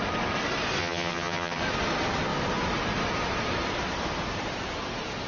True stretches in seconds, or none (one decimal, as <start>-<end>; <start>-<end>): 0.0-0.8; 1.6-5.3